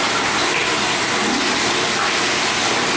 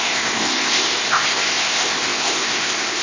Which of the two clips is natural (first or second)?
first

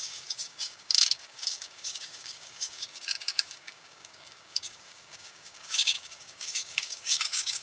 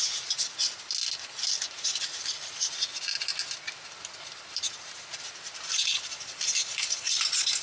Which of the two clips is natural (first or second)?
second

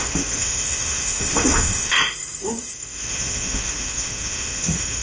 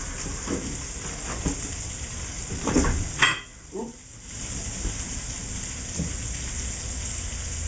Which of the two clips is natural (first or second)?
second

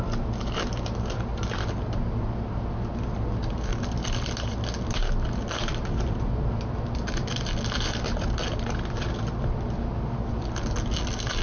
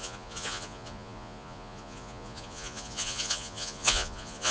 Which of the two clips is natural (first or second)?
first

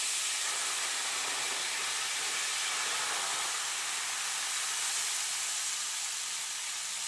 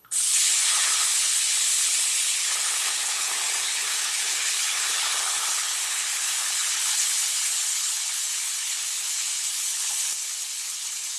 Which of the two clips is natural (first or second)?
first